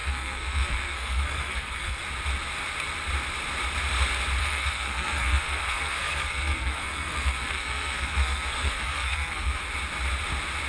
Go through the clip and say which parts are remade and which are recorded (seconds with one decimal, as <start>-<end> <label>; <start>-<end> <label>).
0.0-2.0 remade; 2.0-4.4 recorded; 4.4-9.6 remade; 9.6-10.7 recorded